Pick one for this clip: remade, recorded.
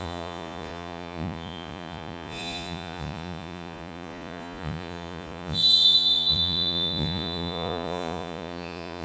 remade